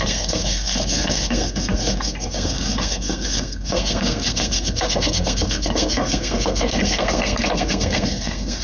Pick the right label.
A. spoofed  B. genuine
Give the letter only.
A